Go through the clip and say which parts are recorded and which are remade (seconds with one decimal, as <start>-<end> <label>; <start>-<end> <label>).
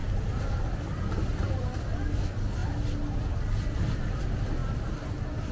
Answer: 0.0-1.8 remade; 1.8-5.5 recorded